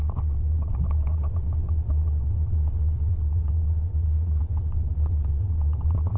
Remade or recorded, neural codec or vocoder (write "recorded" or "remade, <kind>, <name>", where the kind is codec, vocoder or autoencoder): remade, vocoder, WaveNeXt